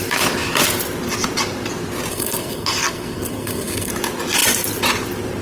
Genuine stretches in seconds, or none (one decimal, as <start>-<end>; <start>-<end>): 0.0-2.1; 3.9-5.4